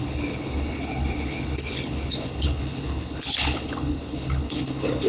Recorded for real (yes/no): no